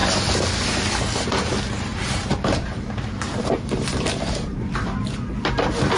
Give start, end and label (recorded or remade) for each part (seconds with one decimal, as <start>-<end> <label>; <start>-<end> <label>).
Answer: 0.0-1.9 recorded; 1.9-5.0 remade; 5.0-6.0 recorded